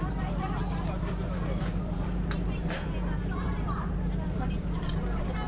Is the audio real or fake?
fake